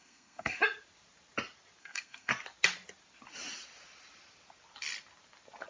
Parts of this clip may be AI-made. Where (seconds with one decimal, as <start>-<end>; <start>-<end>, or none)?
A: 0.0-0.6; 1.8-2.3